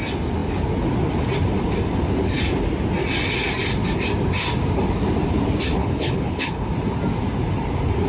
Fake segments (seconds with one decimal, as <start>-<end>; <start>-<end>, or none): 5.8-6.7